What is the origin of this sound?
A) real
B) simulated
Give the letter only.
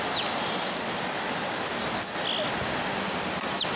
A